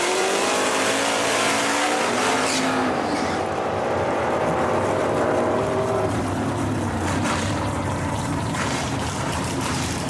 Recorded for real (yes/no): no